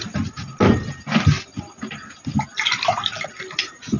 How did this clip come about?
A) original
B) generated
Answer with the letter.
A